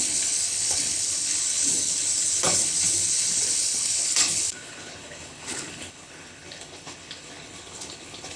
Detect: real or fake fake